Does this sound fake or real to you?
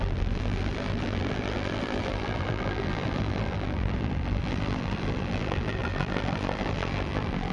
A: fake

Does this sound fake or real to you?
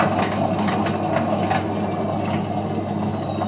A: real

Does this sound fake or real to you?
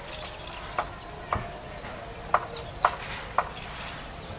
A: real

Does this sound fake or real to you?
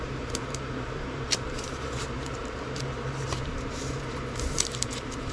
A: fake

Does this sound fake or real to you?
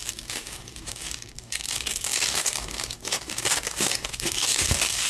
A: fake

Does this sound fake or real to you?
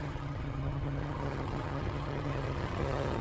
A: fake